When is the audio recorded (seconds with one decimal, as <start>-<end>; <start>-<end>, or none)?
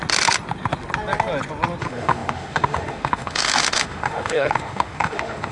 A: 0.0-1.8